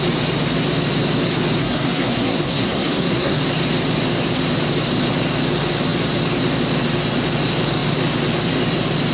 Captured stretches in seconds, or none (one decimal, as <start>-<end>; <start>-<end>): 0.0-1.6; 3.4-9.1